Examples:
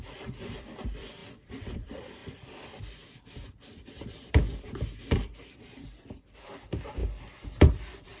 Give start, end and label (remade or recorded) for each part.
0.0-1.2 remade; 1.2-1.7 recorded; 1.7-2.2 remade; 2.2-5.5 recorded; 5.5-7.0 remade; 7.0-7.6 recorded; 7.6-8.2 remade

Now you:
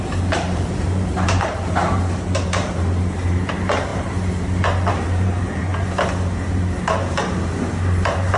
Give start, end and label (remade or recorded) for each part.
0.0-3.9 remade; 3.9-4.9 recorded; 4.9-5.7 remade; 5.7-6.7 recorded; 6.7-8.4 remade

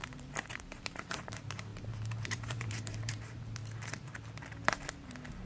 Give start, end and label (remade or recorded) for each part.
0.0-3.6 remade; 3.6-5.5 recorded

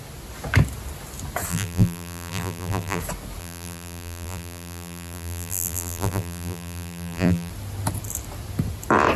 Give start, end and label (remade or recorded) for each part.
0.0-1.5 recorded; 1.5-3.0 remade; 3.0-3.4 recorded; 3.4-7.5 remade; 7.5-9.2 recorded

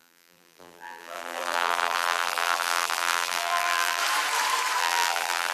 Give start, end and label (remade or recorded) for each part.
0.0-4.0 remade; 4.0-4.8 recorded; 4.8-5.5 remade

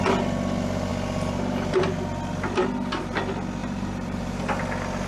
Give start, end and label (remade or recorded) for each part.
0.0-3.6 recorded; 3.6-4.4 remade; 4.4-5.1 recorded

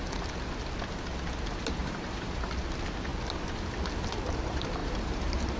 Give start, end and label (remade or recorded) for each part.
0.0-1.8 recorded; 1.8-2.5 remade; 2.5-4.8 recorded; 4.8-5.6 remade

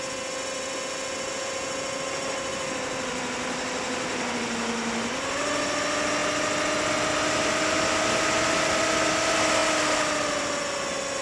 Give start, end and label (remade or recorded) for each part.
0.0-9.6 recorded; 9.6-10.4 remade; 10.4-11.2 recorded